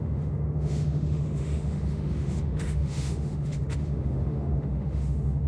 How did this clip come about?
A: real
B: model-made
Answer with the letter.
B